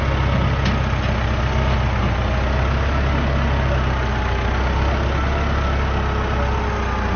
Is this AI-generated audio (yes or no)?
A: no